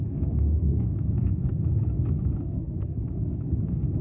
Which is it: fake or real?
fake